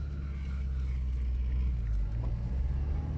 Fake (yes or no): no